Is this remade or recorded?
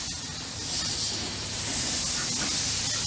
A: recorded